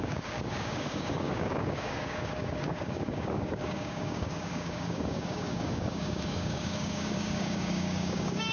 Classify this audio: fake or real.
fake